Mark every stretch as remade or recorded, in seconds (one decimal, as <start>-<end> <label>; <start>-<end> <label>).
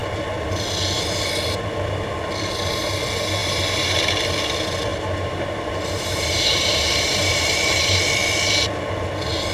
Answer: 0.0-3.4 recorded; 3.4-4.1 remade; 4.1-4.9 recorded; 4.9-8.1 remade; 8.1-9.5 recorded